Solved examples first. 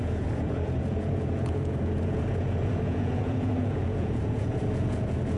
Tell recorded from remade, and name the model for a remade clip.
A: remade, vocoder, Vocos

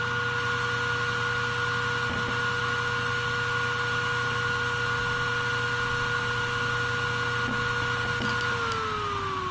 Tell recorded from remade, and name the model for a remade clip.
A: recorded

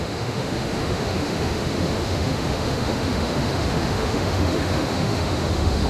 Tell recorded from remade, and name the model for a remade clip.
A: remade, autoencoder, DAC-VAE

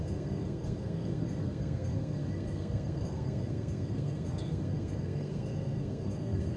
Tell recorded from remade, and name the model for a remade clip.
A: remade, codec, SNAC